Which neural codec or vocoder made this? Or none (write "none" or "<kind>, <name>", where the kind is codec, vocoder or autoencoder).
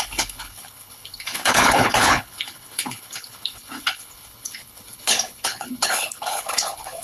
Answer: codec, HILCodec